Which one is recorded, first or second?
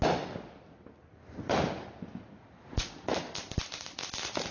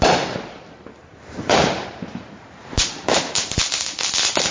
first